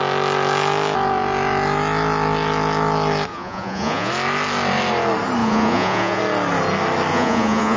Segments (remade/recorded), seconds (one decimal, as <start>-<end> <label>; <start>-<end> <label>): 0.0-3.3 recorded; 3.3-4.1 remade; 4.1-5.4 recorded; 5.4-6.2 remade; 6.2-7.1 recorded; 7.1-7.8 remade